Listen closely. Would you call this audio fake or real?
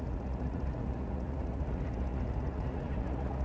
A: fake